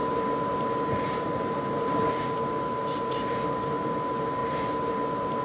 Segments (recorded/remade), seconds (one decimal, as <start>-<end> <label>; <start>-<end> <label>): 0.0-5.4 recorded